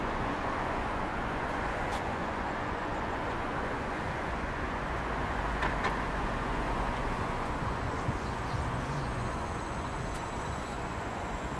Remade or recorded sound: remade